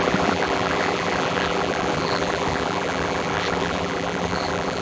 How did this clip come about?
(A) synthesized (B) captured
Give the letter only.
A